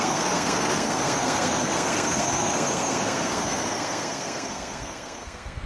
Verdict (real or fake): fake